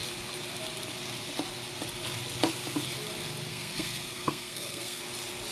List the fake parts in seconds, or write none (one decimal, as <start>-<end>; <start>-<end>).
3.5-5.0